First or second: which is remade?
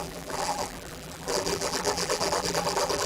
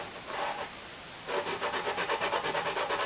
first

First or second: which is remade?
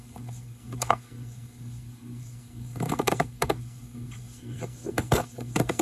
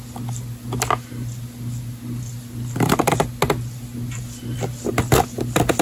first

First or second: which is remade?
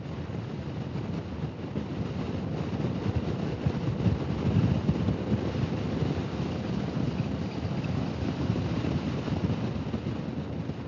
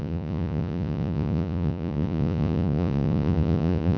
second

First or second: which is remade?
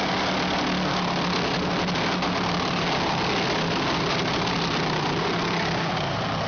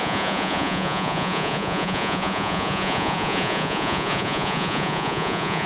second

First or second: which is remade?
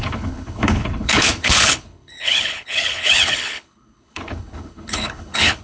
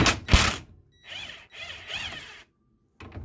first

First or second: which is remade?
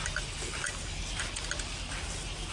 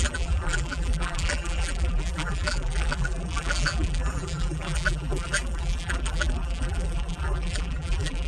second